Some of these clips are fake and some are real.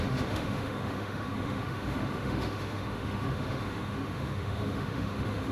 fake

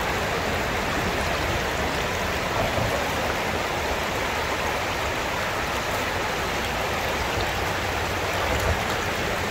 real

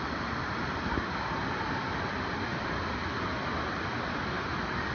real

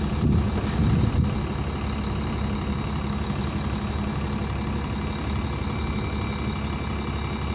real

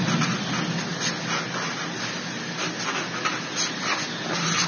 real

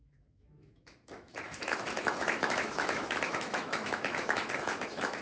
fake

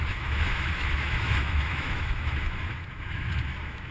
fake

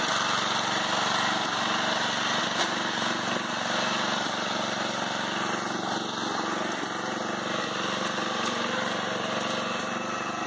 real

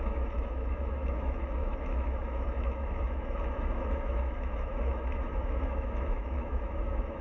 fake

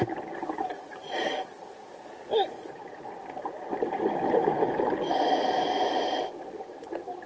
real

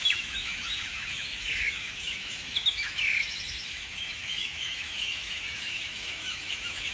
fake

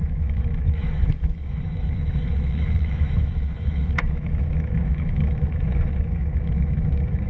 fake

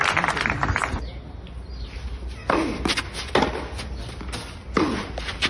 real